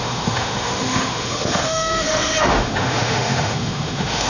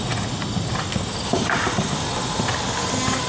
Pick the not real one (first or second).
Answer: first